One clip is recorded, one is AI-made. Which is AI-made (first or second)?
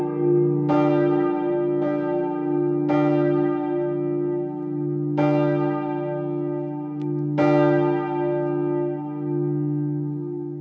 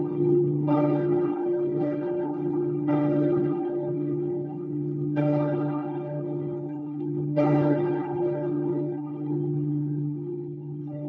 second